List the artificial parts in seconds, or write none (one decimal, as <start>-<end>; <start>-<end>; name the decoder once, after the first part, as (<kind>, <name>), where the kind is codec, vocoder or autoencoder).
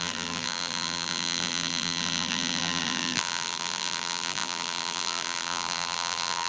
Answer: 0.0-6.5 (vocoder, BigVGAN v2)